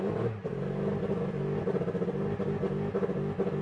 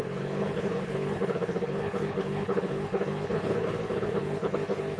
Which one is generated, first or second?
second